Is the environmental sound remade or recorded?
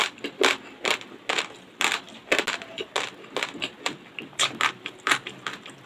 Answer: recorded